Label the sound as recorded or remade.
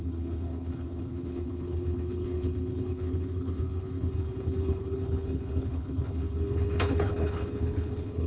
remade